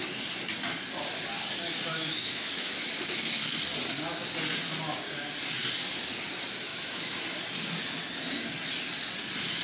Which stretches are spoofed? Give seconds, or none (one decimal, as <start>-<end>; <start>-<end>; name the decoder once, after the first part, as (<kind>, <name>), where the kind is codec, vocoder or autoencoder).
1.9-2.9 (autoencoder, DAC-VAE); 6.7-7.2